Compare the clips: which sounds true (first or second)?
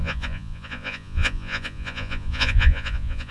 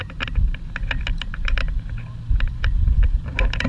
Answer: second